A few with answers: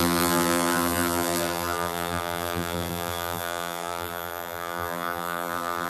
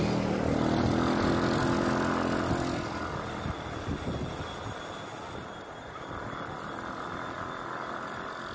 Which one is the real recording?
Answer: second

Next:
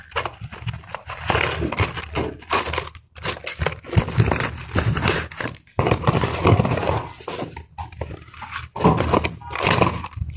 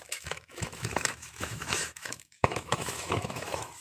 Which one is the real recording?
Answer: first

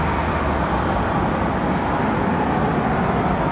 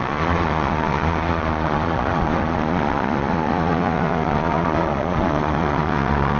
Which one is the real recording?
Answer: first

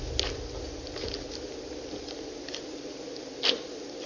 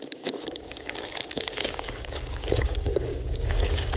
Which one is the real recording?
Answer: first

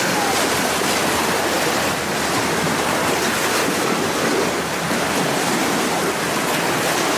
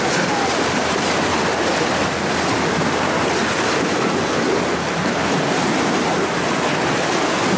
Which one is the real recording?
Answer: second